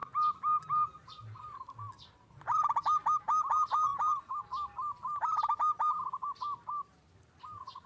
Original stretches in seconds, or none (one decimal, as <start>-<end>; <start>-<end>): 0.0-7.9

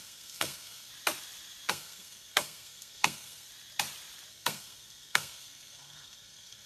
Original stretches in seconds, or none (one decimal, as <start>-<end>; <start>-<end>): 0.9-1.7; 3.5-4.3

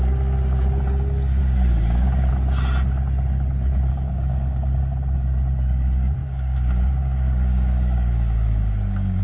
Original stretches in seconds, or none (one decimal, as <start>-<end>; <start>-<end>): 0.0-1.4; 2.3-3.9; 4.8-6.2

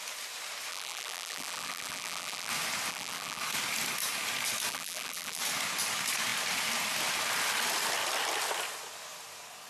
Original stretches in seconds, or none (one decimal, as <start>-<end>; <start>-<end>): 0.0-0.7; 2.5-2.9; 3.4-4.7; 5.4-9.7

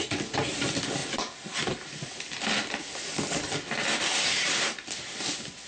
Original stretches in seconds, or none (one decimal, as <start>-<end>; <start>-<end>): 0.0-5.7

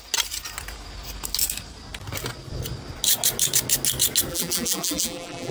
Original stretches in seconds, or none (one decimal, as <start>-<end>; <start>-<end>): 0.0-4.3